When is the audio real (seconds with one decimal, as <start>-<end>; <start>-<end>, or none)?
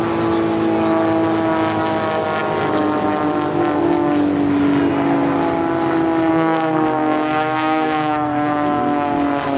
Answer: 0.0-6.3